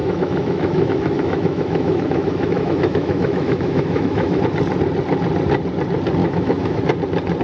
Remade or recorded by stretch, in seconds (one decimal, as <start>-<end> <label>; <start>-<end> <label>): 0.0-4.4 remade; 4.4-6.2 recorded; 6.2-6.8 remade; 6.8-7.4 recorded